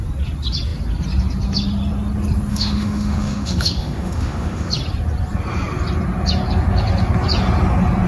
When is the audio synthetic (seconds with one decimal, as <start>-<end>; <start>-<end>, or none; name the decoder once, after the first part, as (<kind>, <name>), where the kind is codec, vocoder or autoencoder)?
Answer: 2.5-4.7 (autoencoder, DAC-VAE)

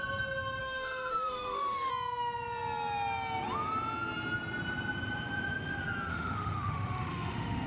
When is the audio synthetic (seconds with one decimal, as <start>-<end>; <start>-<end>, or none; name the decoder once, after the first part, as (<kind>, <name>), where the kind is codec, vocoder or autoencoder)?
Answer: 0.6-1.9 (autoencoder, DAC-VAE); 6.1-7.7

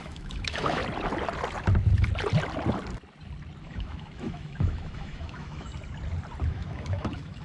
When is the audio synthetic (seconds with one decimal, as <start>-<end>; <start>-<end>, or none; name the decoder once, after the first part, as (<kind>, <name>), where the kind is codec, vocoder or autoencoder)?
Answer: 0.0-0.8 (autoencoder, DAC-VAE); 3.6-5.7; 6.5-7.4

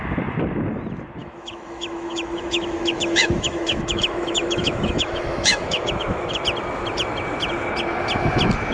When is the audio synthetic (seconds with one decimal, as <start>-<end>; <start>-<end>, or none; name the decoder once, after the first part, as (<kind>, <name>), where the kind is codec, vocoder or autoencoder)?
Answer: 1.2-6.4 (autoencoder, DAC-VAE)

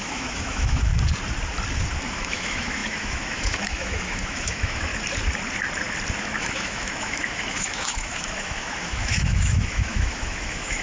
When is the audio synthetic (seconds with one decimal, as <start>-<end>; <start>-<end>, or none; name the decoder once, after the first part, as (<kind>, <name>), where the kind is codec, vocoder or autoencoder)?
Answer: 0.0-0.9 (autoencoder, DAC-VAE); 2.1-4.9; 6.2-10.8

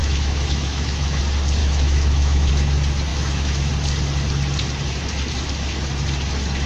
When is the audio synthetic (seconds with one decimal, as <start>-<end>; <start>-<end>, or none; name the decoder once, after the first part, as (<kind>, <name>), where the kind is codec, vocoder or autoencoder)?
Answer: 0.0-1.2 (autoencoder, DAC-VAE); 1.6-2.5; 3.1-3.7